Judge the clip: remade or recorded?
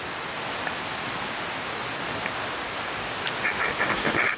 recorded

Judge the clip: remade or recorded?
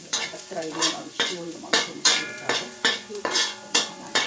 remade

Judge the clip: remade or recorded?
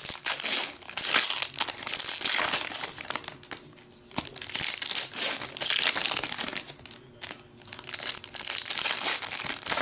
recorded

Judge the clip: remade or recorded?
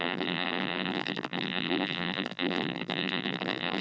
remade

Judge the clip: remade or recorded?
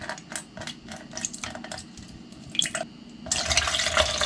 recorded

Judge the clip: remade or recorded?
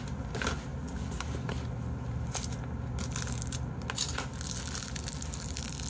recorded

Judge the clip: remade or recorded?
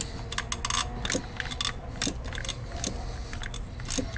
recorded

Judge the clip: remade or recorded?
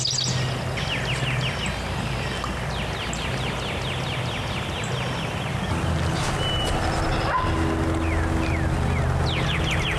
recorded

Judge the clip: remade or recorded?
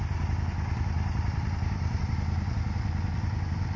remade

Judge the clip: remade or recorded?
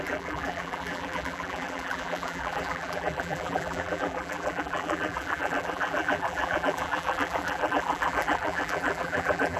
remade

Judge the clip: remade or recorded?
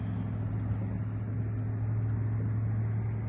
recorded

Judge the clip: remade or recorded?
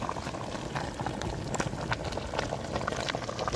recorded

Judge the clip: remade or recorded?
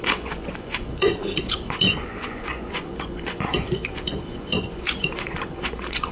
remade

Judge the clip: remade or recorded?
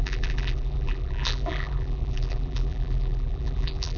remade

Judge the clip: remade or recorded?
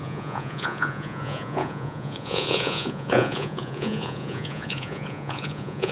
remade